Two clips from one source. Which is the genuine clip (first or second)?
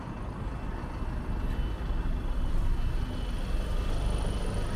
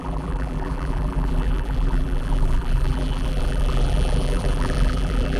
first